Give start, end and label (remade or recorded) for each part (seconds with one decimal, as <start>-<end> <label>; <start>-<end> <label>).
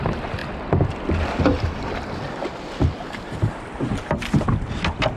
0.0-5.2 recorded